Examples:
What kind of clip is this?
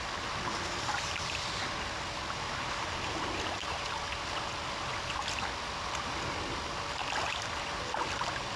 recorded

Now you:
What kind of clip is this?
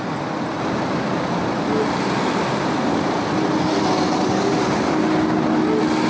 recorded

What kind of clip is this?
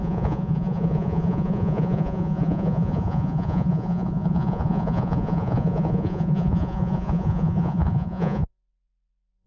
remade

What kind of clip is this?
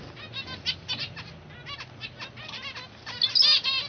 recorded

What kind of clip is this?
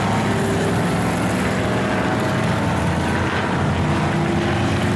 recorded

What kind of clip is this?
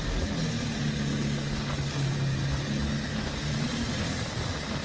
recorded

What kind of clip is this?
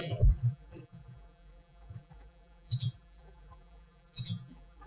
remade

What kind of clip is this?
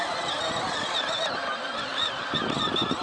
remade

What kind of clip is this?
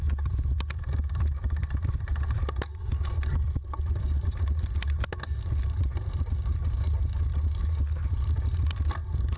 recorded